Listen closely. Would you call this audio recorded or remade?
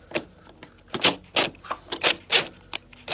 recorded